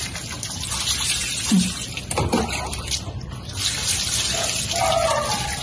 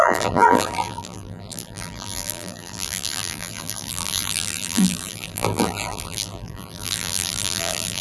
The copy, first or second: second